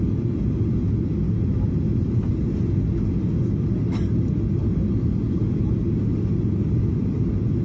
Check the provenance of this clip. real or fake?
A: real